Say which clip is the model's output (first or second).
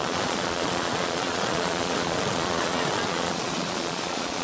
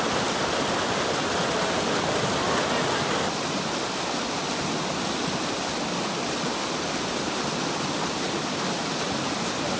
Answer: first